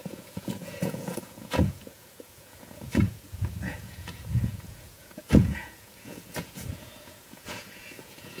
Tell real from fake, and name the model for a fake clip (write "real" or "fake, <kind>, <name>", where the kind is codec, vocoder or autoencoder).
fake, vocoder, Vocos